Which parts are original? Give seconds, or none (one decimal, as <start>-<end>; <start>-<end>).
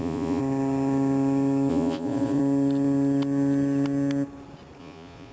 0.4-1.7; 2.4-4.8